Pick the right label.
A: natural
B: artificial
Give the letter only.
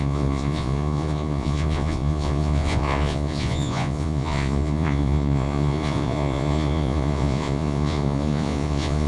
B